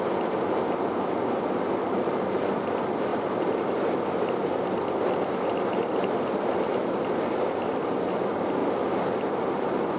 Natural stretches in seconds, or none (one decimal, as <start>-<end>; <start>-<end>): 0.0-1.8; 2.5-10.0